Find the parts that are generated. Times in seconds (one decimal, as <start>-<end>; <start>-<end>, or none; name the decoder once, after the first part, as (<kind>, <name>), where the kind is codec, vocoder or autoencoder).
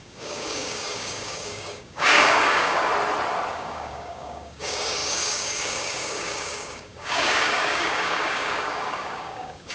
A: 0.0-2.9 (codec, DAC); 3.5-9.7